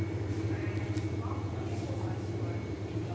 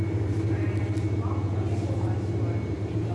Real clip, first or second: second